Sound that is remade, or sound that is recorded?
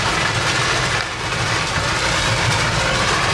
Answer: recorded